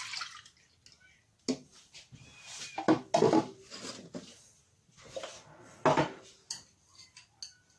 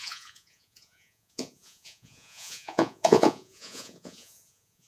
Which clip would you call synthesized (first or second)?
second